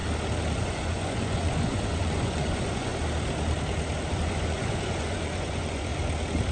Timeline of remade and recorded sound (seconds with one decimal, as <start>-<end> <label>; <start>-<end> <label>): 0.0-0.6 recorded; 0.6-2.9 remade; 2.9-4.1 recorded; 4.1-5.9 remade; 5.9-6.5 recorded